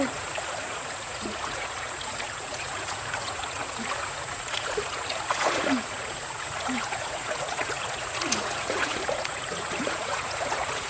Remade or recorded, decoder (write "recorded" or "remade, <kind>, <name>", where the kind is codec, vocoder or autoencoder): remade, vocoder, Vocos